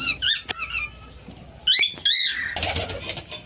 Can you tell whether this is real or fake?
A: real